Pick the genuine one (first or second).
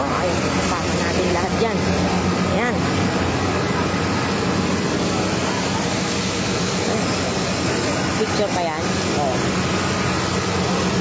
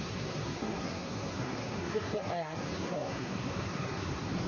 first